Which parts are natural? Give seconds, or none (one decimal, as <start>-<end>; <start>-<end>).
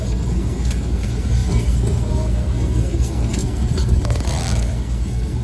none